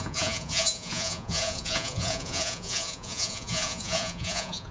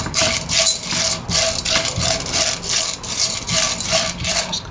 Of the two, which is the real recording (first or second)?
second